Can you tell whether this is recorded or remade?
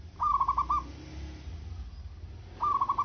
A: recorded